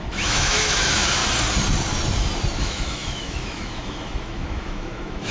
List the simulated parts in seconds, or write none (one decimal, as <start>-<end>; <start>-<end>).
0.0-1.2; 2.6-5.3